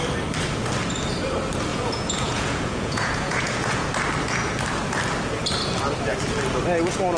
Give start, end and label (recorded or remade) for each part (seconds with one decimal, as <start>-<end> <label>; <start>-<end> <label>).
0.0-1.7 recorded; 1.7-3.9 remade; 3.9-7.2 recorded